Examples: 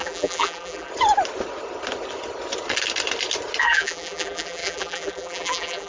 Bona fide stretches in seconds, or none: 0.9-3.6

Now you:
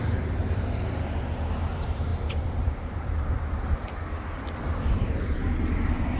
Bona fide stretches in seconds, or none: none

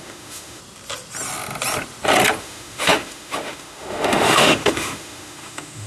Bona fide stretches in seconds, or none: 0.6-2.4

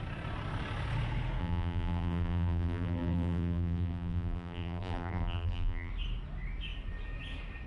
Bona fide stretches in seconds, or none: 0.0-1.4; 5.9-7.7

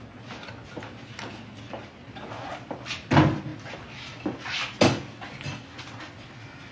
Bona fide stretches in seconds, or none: 0.0-6.7